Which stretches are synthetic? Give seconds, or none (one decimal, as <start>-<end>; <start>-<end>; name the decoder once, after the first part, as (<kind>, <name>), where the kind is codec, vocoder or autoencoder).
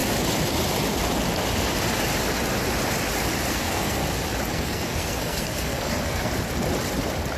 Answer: 3.5-4.0 (codec, SNAC); 4.5-6.3